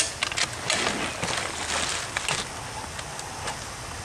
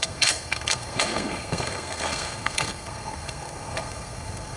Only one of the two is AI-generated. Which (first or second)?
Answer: second